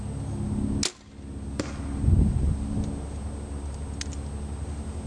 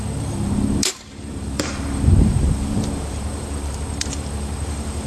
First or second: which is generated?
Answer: second